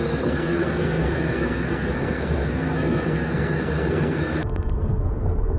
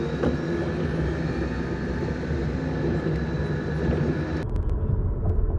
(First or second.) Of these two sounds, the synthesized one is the first